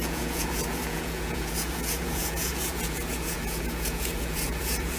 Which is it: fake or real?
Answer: fake